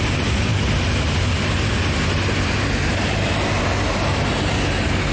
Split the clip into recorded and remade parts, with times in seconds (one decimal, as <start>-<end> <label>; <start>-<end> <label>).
0.0-5.1 recorded